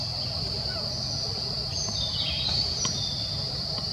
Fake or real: real